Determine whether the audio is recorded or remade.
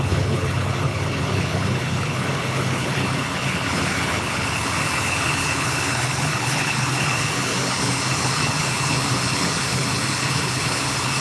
remade